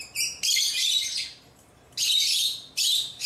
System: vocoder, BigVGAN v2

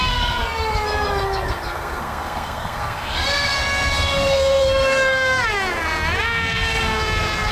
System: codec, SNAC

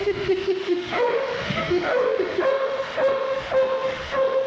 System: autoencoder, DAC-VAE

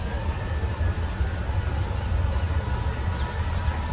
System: none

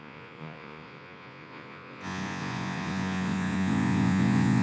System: vocoder, Vocos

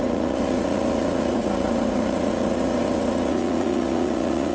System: vocoder, Vocos